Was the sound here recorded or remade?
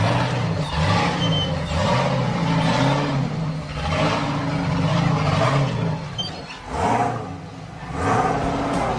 recorded